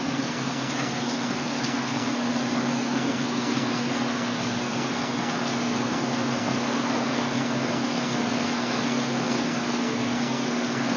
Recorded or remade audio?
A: remade